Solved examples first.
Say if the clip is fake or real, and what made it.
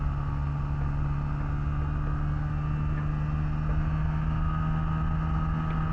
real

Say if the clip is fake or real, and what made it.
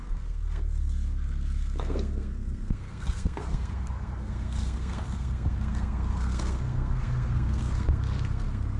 fake, codec, SNAC